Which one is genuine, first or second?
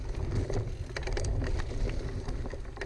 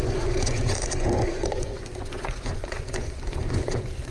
first